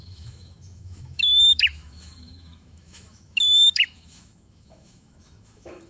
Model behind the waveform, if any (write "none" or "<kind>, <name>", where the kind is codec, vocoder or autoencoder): autoencoder, DAC-VAE